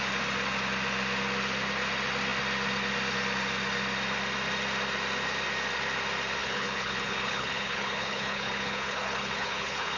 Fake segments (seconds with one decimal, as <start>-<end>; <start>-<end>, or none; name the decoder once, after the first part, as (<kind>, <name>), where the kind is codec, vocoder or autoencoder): 6.4-10.0 (codec, HILCodec)